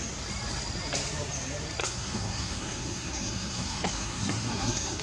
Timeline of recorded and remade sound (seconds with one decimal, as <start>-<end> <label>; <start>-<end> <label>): 0.0-1.8 recorded; 1.8-5.0 remade